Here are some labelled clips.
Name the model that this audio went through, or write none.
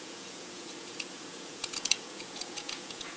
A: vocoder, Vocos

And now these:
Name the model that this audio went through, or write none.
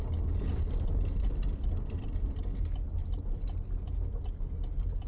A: none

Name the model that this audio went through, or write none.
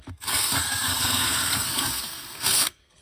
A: codec, SNAC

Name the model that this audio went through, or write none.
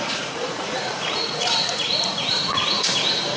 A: vocoder, Vocos